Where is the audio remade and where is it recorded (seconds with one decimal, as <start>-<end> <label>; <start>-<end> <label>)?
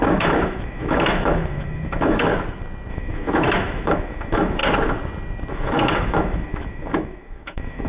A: 0.0-2.3 remade; 2.3-2.9 recorded; 2.9-4.6 remade; 4.6-5.5 recorded; 5.5-7.9 remade